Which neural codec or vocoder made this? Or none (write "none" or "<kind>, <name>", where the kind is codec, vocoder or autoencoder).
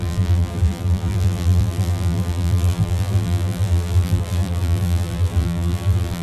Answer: vocoder, BigVGAN v2